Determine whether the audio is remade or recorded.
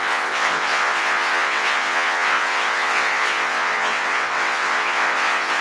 remade